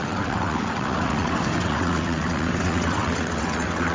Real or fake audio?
fake